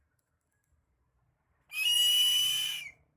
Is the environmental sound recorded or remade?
remade